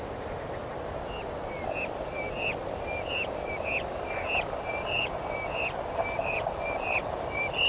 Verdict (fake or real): real